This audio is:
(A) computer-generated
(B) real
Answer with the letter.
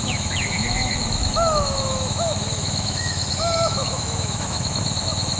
A